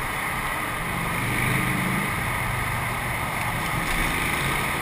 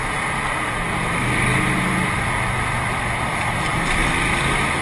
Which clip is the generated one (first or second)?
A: first